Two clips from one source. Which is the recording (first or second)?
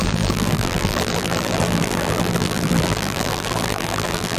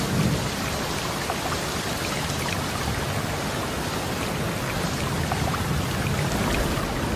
second